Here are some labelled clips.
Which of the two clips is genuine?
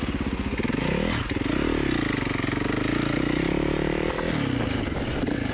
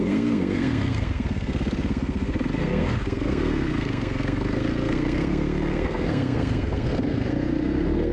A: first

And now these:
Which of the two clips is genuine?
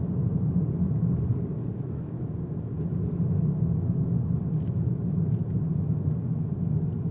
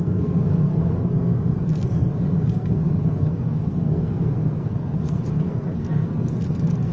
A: first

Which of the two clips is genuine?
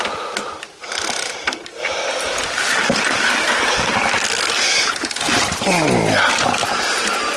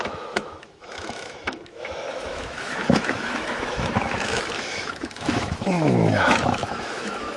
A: first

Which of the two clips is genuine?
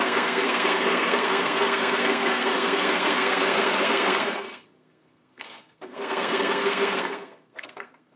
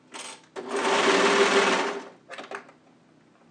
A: second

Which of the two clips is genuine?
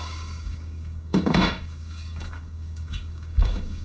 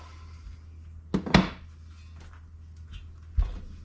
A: second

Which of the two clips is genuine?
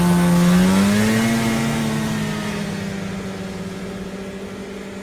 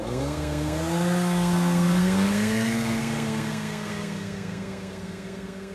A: first